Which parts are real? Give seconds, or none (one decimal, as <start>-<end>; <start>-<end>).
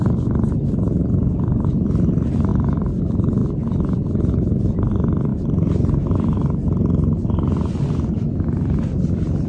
2.5-3.0; 3.4-4.2; 5.3-7.7